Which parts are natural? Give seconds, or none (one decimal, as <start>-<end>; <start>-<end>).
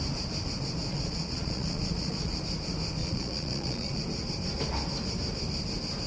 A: 0.0-0.9; 2.4-3.0; 4.0-6.1